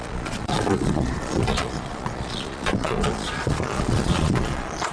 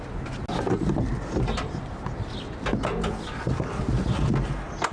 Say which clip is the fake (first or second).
first